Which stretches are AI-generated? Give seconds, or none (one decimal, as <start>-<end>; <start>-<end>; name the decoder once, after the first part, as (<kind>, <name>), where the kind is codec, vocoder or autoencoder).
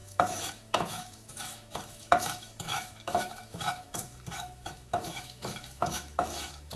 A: 0.0-6.8 (autoencoder, DAC-VAE)